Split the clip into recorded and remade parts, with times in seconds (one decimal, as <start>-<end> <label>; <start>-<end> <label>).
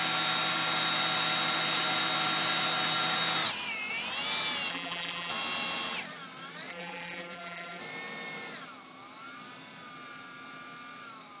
0.0-4.7 recorded; 4.7-5.3 remade; 5.3-6.7 recorded; 6.7-7.8 remade; 7.8-11.4 recorded